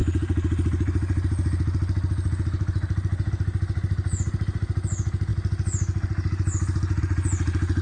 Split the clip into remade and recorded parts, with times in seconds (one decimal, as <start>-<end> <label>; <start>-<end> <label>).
0.0-7.8 recorded